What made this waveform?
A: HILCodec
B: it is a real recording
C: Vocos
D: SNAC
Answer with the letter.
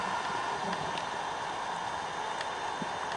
B